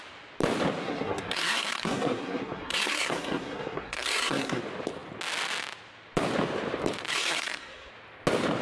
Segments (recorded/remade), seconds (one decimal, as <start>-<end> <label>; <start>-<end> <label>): 0.0-0.8 recorded; 0.8-4.6 remade; 4.6-7.1 recorded; 7.1-7.9 remade; 7.9-8.6 recorded